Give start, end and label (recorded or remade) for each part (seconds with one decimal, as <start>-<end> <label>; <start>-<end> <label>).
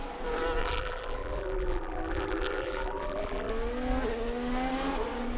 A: 0.0-0.6 recorded; 0.6-3.5 remade; 3.5-5.4 recorded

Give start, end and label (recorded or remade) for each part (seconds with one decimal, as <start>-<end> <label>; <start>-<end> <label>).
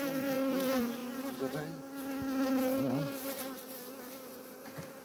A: 0.0-1.0 remade; 1.0-4.0 recorded; 4.0-5.0 remade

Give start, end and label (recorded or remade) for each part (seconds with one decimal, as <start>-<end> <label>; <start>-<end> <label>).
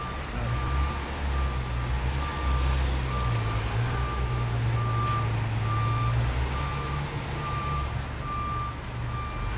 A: 0.0-6.7 recorded; 6.7-8.1 remade; 8.1-9.6 recorded